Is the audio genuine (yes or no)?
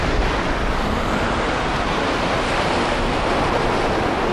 yes